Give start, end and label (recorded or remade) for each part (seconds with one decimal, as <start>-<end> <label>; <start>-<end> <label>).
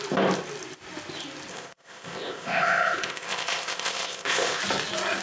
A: 0.0-1.5 recorded; 1.5-4.6 remade; 4.6-5.2 recorded